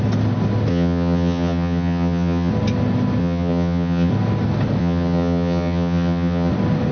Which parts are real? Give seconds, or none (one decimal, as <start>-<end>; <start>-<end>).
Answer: 0.0-0.7; 2.5-3.2; 4.1-4.8; 6.5-6.9